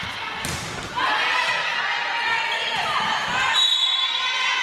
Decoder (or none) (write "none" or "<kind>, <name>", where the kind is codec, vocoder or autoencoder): none